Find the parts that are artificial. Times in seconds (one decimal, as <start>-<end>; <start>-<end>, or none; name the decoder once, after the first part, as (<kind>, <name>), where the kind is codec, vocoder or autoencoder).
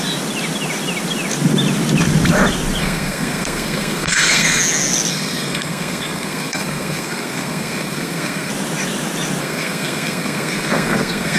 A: 2.8-4.6 (codec, SNAC); 5.1-8.5; 9.4-11.4